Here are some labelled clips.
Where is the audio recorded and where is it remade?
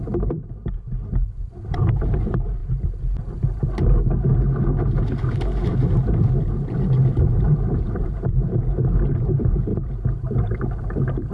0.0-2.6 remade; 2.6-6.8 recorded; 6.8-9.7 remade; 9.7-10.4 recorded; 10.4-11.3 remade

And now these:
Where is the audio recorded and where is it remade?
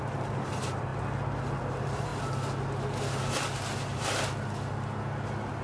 0.0-0.9 remade; 0.9-1.6 recorded; 1.6-2.1 remade; 2.1-5.6 recorded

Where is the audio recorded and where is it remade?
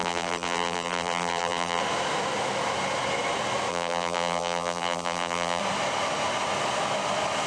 0.0-1.8 remade; 1.8-3.7 recorded; 3.7-5.6 remade; 5.6-7.5 recorded